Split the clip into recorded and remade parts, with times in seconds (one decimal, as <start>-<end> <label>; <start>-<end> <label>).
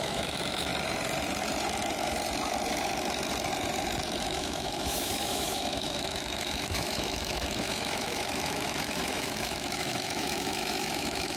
0.0-0.7 remade; 0.7-4.2 recorded; 4.2-11.4 remade